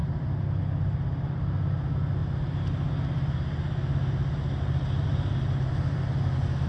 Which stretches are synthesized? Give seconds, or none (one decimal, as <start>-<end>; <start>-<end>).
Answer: none